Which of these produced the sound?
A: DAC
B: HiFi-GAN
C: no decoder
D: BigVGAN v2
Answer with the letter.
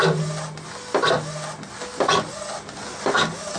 C